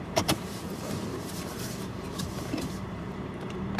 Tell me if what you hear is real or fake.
fake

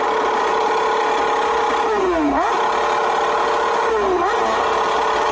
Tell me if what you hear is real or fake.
real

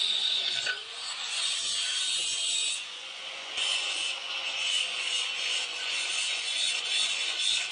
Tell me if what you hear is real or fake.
fake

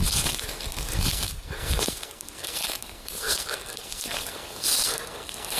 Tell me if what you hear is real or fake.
fake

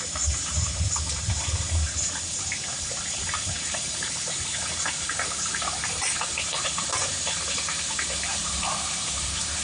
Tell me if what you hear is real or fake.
fake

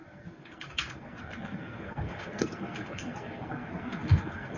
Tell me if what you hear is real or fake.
fake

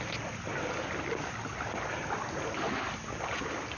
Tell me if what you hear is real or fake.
real